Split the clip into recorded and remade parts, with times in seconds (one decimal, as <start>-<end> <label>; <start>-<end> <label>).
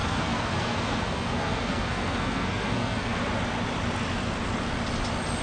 0.0-3.2 remade; 3.2-5.4 recorded